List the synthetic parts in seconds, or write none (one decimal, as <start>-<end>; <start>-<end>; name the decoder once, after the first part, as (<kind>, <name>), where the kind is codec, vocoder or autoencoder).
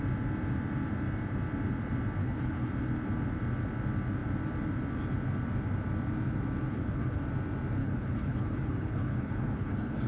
2.2-2.7 (codec, HILCodec); 6.7-7.2; 7.8-10.1